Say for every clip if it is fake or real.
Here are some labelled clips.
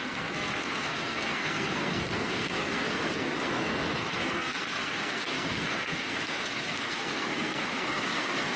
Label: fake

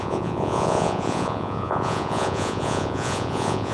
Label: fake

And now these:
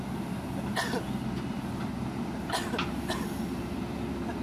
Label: real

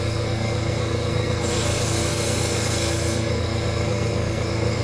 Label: fake